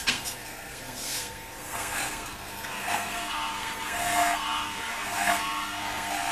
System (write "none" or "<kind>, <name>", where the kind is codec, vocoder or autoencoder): codec, SNAC